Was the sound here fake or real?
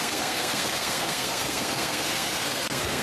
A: fake